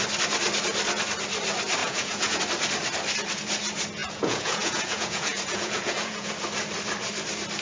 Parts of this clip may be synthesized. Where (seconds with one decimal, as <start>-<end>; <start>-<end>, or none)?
1.8-2.4; 4.0-6.3